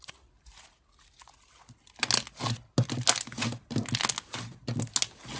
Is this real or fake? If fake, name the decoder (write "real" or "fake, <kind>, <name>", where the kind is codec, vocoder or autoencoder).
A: real